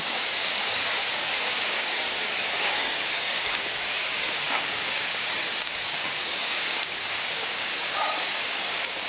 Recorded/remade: remade